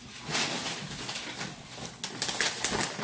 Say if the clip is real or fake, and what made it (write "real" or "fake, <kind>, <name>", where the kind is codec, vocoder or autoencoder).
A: real